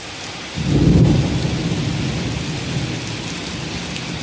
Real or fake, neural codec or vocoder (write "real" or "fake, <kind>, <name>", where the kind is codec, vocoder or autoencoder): real